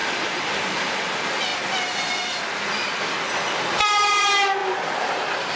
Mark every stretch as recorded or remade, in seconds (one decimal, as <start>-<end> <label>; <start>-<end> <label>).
0.0-1.0 remade; 1.0-4.6 recorded; 4.6-5.1 remade; 5.1-5.6 recorded